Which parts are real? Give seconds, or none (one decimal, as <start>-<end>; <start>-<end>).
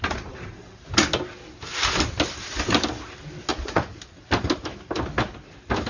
0.0-3.5; 4.0-5.9